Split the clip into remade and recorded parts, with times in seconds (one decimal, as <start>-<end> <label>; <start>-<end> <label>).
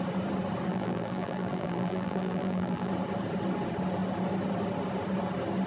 0.0-0.7 recorded; 0.7-2.9 remade; 2.9-5.7 recorded